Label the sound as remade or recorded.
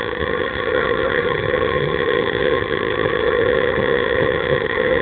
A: remade